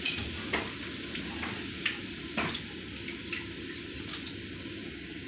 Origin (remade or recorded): recorded